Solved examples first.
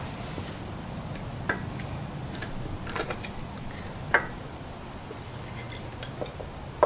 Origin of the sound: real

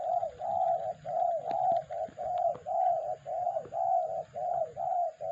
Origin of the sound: real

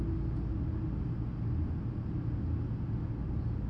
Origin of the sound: real